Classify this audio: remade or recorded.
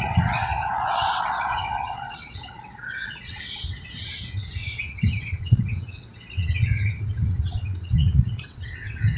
remade